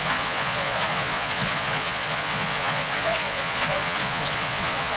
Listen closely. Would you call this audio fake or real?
fake